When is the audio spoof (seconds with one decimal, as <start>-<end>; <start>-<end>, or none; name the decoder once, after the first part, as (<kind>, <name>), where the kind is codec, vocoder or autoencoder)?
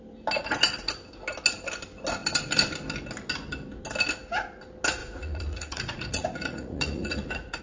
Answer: 5.0-7.6 (vocoder, Vocos)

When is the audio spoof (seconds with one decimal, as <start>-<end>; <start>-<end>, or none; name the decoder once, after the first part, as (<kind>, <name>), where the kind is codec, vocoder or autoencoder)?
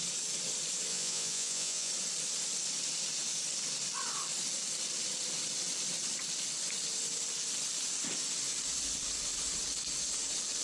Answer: 0.9-1.9 (vocoder, Vocos)